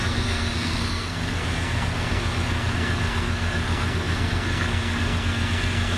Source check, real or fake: fake